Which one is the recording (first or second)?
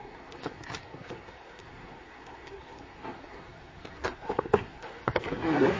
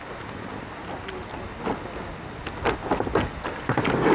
second